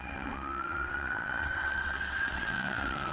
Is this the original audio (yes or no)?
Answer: no